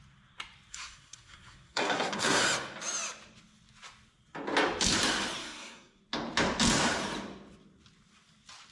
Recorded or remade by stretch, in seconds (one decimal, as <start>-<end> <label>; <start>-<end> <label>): 0.0-0.7 recorded; 0.7-2.4 remade; 2.4-5.4 recorded; 5.4-6.0 remade; 6.0-8.7 recorded